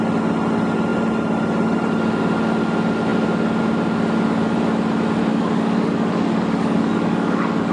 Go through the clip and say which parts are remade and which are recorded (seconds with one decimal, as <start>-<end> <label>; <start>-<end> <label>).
0.0-5.3 recorded; 5.3-7.7 remade